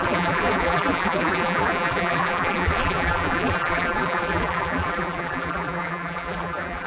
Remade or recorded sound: remade